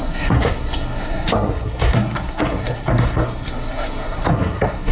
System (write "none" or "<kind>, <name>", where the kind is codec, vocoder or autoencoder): codec, SNAC